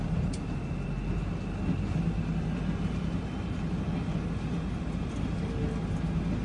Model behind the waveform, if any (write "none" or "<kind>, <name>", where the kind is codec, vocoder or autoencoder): none